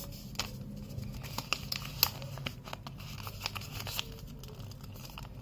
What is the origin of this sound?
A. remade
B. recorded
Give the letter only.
B